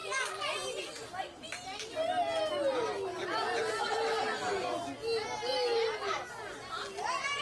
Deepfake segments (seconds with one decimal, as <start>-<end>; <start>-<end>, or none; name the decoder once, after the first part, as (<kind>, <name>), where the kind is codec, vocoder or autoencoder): none